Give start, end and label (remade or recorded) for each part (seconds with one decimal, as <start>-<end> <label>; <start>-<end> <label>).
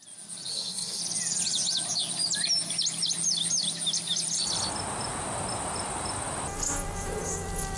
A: 0.0-0.5 recorded; 0.5-1.0 remade; 1.0-7.8 recorded